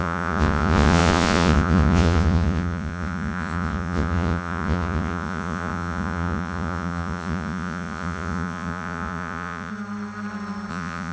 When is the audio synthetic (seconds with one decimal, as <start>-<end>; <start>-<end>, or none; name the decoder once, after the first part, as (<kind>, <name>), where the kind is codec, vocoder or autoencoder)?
0.0-9.7 (vocoder, Vocos); 10.7-11.1